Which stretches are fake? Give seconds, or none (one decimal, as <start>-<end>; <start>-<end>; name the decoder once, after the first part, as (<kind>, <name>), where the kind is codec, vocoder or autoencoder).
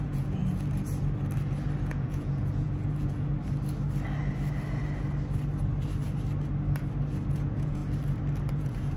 0.0-0.4 (vocoder, Vocos); 1.9-3.3; 7.3-7.8; 8.5-9.0